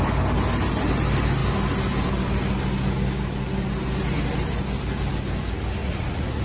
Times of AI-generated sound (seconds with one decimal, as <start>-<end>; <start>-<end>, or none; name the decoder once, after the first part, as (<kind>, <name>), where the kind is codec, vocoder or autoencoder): 5.8-6.4 (vocoder, Vocos)